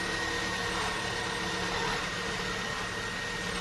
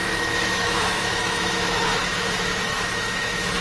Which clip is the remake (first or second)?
second